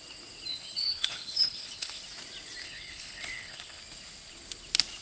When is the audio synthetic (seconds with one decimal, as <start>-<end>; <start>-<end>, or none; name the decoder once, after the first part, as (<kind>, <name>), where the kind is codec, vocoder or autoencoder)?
0.5-2.0 (codec, HILCodec); 2.6-3.8